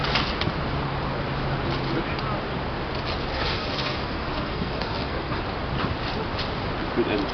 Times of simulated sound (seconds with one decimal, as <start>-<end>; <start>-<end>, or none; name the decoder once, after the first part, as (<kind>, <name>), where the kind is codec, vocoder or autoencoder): 3.3-5.4 (codec, SNAC)